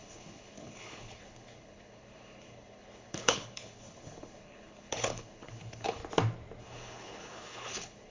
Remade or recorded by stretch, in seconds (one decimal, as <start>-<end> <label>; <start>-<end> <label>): 0.0-6.0 remade; 6.0-6.6 recorded; 6.6-8.1 remade